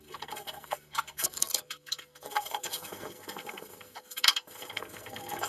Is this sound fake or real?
fake